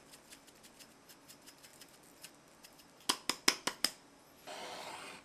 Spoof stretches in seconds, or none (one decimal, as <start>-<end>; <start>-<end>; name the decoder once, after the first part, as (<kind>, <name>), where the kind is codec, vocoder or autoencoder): none